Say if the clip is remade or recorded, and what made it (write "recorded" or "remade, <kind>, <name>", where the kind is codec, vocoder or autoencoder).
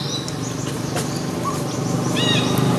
recorded